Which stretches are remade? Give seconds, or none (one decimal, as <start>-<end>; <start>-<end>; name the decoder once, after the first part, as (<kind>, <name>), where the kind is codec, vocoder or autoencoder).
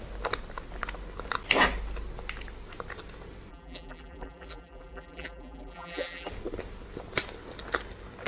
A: 3.5-6.3 (vocoder, BigVGAN v2)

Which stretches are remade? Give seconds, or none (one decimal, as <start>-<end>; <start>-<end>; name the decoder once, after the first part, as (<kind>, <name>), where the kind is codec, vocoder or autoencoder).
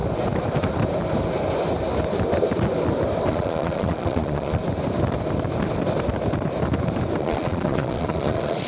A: 3.3-4.6 (vocoder, Vocos); 7.2-8.7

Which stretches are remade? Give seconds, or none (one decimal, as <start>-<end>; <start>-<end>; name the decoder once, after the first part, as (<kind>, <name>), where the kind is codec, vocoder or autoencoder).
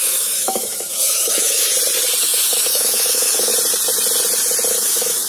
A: 0.0-1.7 (autoencoder, DAC-VAE); 2.2-3.5; 4.7-5.3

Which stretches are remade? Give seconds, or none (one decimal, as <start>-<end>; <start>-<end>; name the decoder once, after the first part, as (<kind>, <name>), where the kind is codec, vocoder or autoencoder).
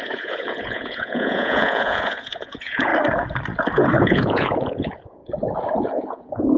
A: 0.0-2.9 (vocoder, Vocos); 4.0-5.2; 5.8-6.6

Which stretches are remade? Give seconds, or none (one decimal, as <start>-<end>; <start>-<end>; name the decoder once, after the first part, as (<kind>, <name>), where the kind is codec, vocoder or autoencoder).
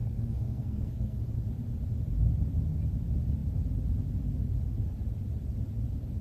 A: 0.0-1.2 (codec, SNAC)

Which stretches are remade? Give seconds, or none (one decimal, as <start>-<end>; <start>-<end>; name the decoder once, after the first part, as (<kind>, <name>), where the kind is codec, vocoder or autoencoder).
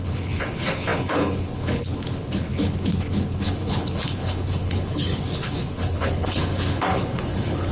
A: 0.0-7.7 (codec, HILCodec)